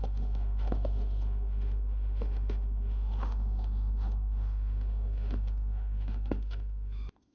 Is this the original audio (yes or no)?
no